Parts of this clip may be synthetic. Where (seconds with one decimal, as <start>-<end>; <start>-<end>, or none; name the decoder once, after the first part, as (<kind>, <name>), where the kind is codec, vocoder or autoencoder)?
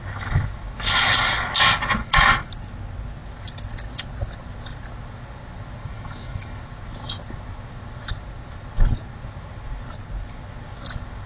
2.0-2.5 (autoencoder, DAC-VAE); 5.8-6.6